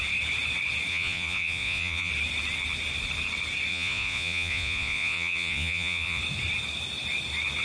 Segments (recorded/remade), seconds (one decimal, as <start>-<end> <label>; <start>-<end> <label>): 0.0-0.9 recorded; 0.9-2.1 remade; 2.1-3.7 recorded; 3.7-6.2 remade; 6.2-7.6 recorded